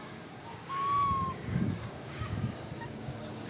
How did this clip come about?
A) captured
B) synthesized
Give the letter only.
B